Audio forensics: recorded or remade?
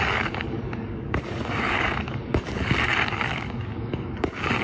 remade